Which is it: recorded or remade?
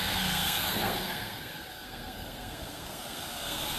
remade